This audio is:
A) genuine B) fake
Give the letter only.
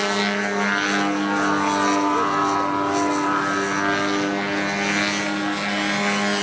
A